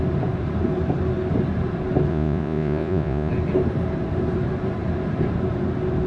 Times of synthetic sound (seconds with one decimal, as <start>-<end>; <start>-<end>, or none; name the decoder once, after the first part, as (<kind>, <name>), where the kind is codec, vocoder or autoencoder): 2.1-3.3 (vocoder, Vocos)